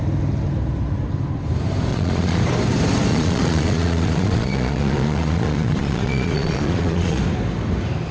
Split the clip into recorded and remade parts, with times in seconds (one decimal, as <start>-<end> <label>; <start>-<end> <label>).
0.0-1.9 recorded; 1.9-2.4 remade; 2.4-3.1 recorded; 3.1-7.2 remade; 7.2-8.1 recorded